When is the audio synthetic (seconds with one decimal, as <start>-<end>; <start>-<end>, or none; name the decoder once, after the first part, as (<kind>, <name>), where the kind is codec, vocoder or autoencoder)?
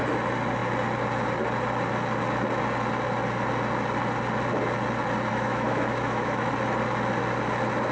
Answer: 5.3-6.5 (autoencoder, DAC-VAE)